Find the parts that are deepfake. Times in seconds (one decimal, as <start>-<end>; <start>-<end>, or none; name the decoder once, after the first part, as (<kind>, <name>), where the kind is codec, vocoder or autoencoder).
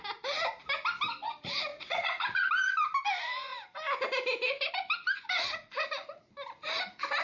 1.7-2.5 (vocoder, Vocos)